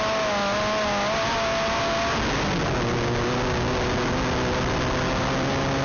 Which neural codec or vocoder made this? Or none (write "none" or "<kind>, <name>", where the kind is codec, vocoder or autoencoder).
none